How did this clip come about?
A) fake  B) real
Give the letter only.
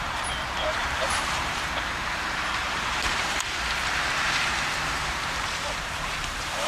A